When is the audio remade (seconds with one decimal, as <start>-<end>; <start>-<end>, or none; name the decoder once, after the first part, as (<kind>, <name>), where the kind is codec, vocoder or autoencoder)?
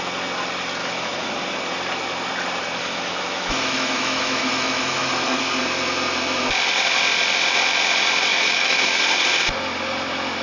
0.8-1.3 (autoencoder, DAC-VAE); 2.8-5.4; 8.3-9.0